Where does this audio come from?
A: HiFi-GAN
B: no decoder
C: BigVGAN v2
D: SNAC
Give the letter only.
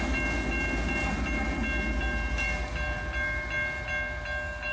B